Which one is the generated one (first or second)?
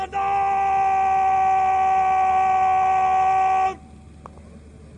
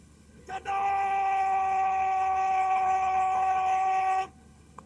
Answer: second